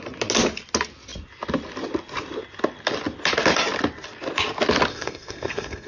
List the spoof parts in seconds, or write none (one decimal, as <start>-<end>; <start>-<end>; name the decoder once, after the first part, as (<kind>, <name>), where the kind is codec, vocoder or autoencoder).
4.9-5.9 (codec, SNAC)